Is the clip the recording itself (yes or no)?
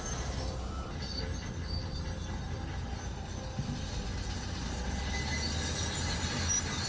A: yes